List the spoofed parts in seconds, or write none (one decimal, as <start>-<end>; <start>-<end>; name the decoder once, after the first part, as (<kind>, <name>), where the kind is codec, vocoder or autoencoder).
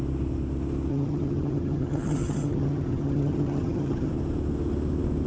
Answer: 0.9-4.1 (vocoder, HiFi-GAN)